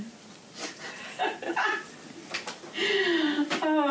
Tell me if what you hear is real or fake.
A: real